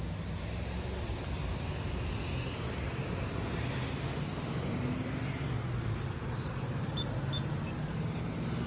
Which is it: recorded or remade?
recorded